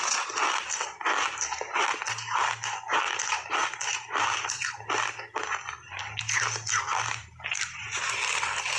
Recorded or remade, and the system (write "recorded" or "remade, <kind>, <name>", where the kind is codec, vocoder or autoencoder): recorded